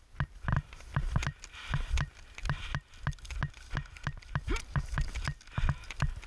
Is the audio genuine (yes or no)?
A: yes